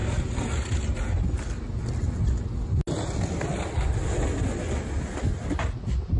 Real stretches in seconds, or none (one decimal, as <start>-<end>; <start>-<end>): 0.0-6.2